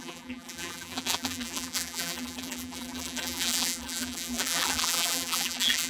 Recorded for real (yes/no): no